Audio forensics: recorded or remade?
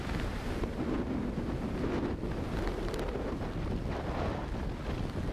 recorded